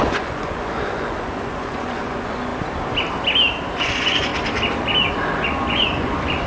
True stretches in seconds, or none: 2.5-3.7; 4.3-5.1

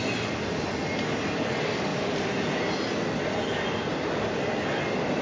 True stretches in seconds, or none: 0.0-5.2

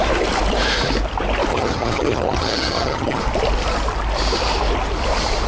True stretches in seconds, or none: 0.0-1.5; 3.2-5.5

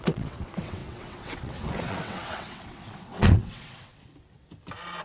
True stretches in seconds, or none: 4.1-5.0